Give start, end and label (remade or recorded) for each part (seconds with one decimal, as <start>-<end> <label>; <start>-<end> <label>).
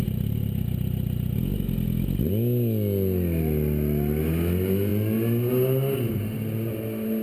0.0-7.2 recorded